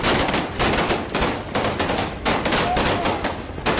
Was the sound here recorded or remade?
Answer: recorded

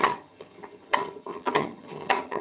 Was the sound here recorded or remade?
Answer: remade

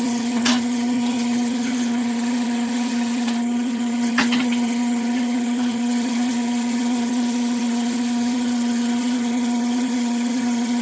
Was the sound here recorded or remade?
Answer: remade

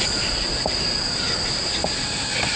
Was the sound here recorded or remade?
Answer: recorded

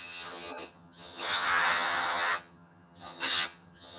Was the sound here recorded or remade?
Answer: remade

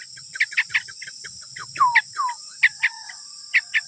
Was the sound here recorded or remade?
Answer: recorded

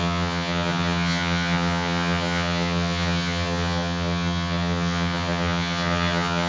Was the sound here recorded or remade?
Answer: remade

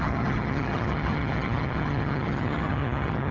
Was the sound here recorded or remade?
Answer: remade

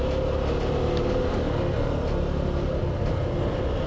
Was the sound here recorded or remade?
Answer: recorded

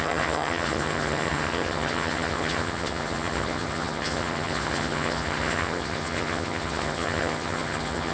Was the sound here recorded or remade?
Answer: remade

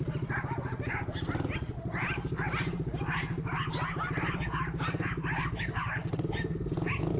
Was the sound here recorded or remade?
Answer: recorded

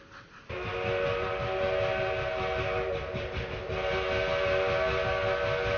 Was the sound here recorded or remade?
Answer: recorded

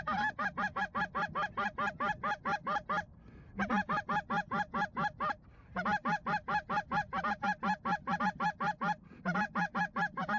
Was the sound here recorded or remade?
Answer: recorded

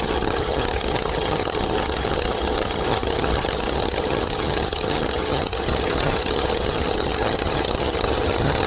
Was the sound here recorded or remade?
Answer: remade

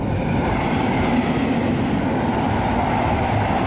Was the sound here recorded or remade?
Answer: recorded